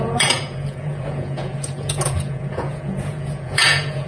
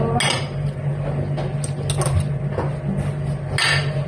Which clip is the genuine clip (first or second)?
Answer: second